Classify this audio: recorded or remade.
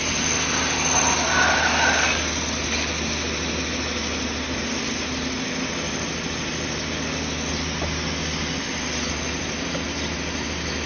recorded